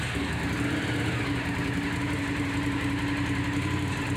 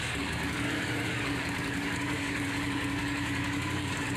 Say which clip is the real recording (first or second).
first